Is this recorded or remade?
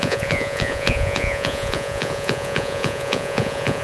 remade